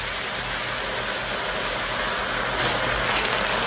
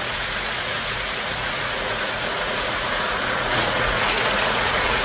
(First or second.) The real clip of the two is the first